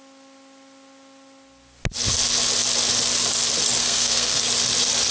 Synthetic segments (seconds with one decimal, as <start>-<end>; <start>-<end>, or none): 3.8-4.4